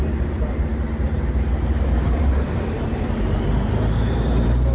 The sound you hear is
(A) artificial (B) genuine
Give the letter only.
A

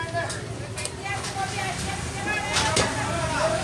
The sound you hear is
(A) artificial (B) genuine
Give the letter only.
B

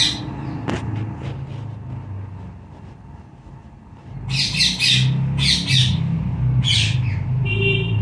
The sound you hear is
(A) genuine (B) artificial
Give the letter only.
A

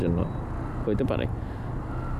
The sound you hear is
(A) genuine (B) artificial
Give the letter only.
A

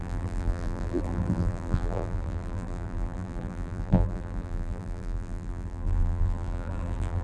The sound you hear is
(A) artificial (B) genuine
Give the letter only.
A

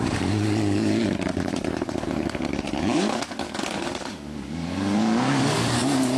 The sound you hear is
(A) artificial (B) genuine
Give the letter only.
A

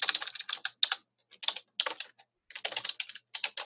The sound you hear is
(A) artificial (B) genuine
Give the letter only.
B